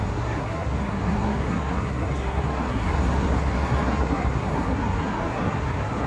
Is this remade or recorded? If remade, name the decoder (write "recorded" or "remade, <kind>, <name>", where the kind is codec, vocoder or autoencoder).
remade, codec, SNAC